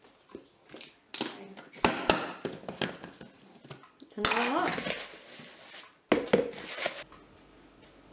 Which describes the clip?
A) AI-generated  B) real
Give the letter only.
B